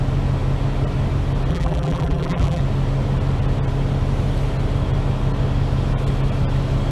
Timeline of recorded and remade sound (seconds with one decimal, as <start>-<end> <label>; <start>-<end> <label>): 0.0-1.5 recorded; 1.5-2.6 remade; 2.6-6.9 recorded